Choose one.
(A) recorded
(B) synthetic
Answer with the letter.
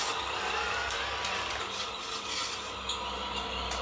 A